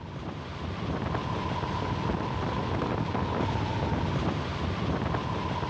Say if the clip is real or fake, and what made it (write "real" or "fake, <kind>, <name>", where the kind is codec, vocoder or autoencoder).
real